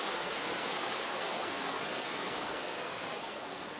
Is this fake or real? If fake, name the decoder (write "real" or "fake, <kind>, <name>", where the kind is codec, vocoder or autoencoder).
fake, codec, SNAC